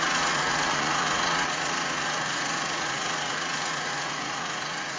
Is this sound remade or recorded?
remade